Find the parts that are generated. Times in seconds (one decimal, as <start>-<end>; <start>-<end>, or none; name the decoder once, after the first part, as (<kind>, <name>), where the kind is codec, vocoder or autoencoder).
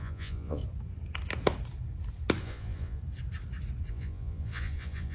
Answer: 0.0-0.6 (vocoder, Vocos); 2.4-3.0; 3.9-5.1